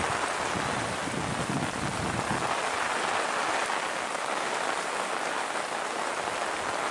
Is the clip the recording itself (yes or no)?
yes